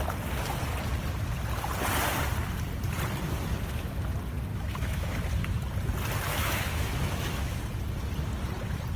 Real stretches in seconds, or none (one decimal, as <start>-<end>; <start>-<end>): 0.0-4.5; 5.1-6.3; 7.6-9.0